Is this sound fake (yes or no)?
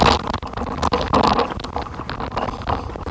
no